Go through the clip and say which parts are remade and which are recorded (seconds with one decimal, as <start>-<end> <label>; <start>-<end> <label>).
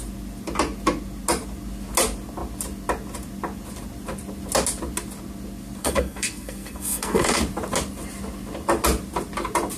0.0-5.8 recorded; 5.8-7.4 remade; 7.4-9.8 recorded